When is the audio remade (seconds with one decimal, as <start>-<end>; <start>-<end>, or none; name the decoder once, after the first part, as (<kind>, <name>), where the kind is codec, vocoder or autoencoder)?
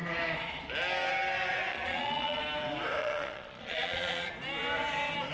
1.7-2.4 (vocoder, Vocos); 3.0-4.3